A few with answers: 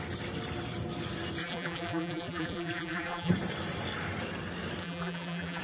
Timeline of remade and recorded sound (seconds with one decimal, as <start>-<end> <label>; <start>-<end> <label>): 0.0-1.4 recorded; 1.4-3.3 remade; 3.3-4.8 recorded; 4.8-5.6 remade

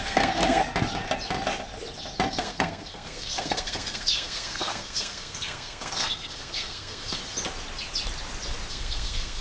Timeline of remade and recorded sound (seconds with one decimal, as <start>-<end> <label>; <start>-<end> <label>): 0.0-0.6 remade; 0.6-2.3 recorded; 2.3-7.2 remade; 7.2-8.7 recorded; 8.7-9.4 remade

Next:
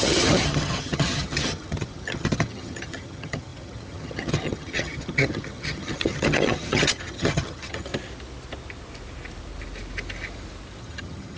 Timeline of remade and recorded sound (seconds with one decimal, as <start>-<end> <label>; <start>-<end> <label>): 0.0-7.9 remade; 7.9-10.8 recorded; 10.8-11.4 remade

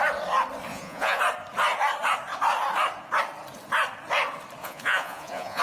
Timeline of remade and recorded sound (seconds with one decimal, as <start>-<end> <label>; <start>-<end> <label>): 0.0-0.7 recorded; 0.7-1.2 remade; 1.2-4.6 recorded; 4.6-5.6 remade

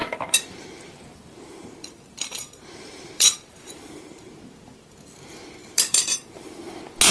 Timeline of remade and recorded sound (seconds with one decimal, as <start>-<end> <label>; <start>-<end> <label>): 0.0-4.3 remade; 4.3-5.6 recorded; 5.6-6.6 remade; 6.6-7.1 recorded

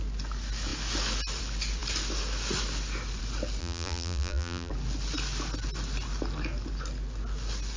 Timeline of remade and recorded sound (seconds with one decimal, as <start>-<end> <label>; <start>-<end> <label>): 0.0-3.6 recorded; 3.6-4.7 remade; 4.7-7.8 recorded

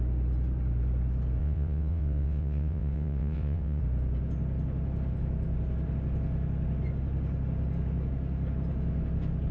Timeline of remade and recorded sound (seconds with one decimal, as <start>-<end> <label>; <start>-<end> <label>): 0.0-1.4 recorded; 1.4-3.8 remade; 3.8-9.5 recorded